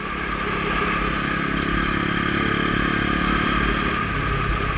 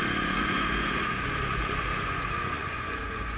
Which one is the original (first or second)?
first